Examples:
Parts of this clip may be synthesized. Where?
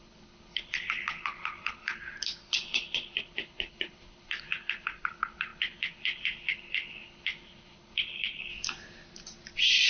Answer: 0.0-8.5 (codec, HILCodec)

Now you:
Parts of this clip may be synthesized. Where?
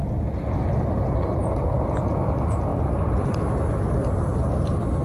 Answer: none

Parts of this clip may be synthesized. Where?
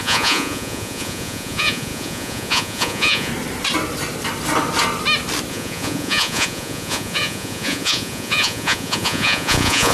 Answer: 0.0-3.3 (vocoder, Vocos); 5.5-9.9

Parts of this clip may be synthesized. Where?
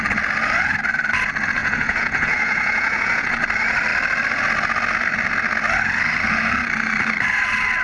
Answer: 1.6-3.3 (vocoder, Vocos)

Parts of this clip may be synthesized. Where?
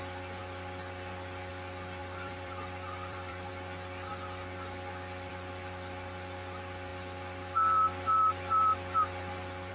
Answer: 2.0-3.5 (vocoder, BigVGAN v2)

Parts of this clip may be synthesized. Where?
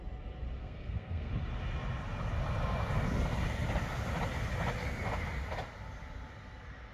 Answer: 0.6-1.3 (codec, SNAC)